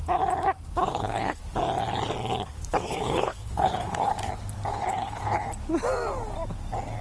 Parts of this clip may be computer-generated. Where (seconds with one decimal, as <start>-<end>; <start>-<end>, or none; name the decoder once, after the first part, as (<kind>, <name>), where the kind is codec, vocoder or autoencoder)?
0.8-1.4 (codec, HILCodec); 2.7-4.1; 4.7-5.5